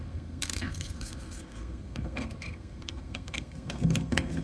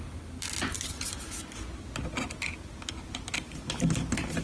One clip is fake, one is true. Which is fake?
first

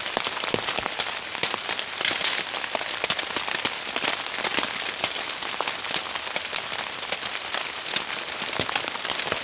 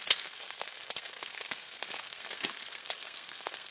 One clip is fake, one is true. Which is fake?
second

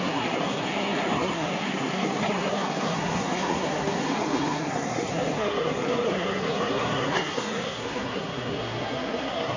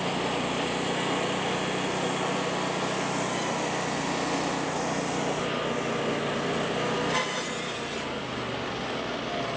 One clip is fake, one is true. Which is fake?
first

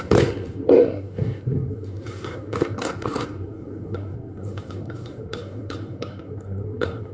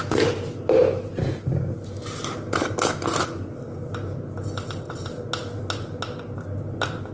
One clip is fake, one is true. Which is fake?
first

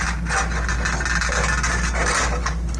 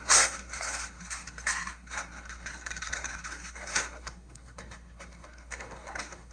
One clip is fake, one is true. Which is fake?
second